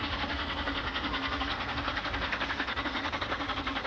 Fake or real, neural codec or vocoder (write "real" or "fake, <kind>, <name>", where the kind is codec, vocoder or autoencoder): fake, codec, SNAC